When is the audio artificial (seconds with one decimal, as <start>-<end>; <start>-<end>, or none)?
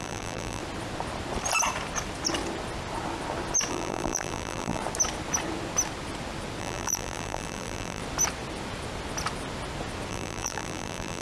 0.0-0.6; 3.7-4.8; 6.6-8.0; 10.1-11.2